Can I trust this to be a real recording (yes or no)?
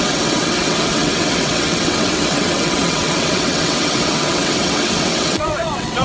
no